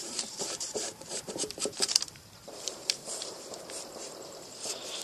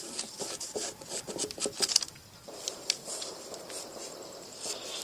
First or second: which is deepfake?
first